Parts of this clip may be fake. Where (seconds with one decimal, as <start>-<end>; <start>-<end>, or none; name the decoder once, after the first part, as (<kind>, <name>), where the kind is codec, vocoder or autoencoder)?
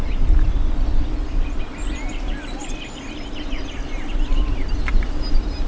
none